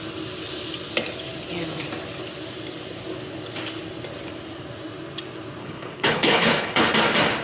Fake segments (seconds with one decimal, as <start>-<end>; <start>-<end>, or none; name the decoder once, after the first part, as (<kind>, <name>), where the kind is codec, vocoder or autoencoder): 5.6-6.9 (codec, HILCodec)